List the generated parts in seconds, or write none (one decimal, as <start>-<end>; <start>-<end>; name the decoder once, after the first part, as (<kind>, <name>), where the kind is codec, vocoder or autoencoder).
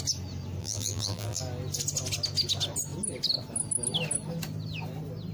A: 0.6-1.4 (vocoder, BigVGAN v2)